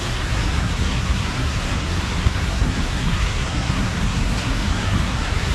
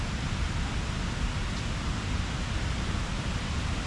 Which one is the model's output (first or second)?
first